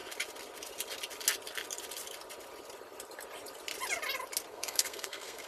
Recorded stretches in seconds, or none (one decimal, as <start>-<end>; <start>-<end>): 0.0-4.5